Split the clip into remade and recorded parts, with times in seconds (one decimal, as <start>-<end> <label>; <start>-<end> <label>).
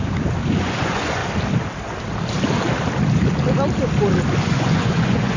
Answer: 0.0-0.6 recorded; 0.6-1.2 remade; 1.2-4.4 recorded; 4.4-5.4 remade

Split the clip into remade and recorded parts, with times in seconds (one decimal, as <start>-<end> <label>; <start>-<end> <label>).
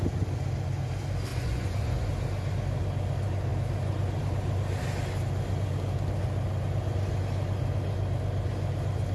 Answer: 0.0-1.3 recorded; 1.3-2.1 remade; 2.1-9.1 recorded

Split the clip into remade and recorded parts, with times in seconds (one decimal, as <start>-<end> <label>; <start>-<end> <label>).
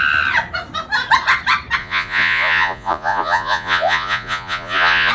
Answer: 0.0-1.8 recorded; 1.8-5.1 remade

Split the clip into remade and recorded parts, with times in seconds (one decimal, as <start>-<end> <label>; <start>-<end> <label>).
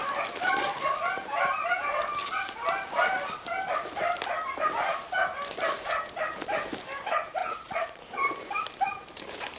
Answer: 0.0-7.4 recorded; 7.4-8.1 remade; 8.1-9.6 recorded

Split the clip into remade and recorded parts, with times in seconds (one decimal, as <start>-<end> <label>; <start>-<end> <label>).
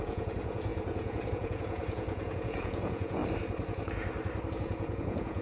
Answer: 0.0-3.2 remade; 3.2-4.5 recorded; 4.5-5.4 remade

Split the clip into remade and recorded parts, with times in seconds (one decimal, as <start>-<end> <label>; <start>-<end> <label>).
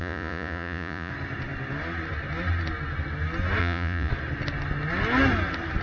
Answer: 0.0-1.1 remade; 1.1-3.6 recorded; 3.6-4.1 remade; 4.1-5.8 recorded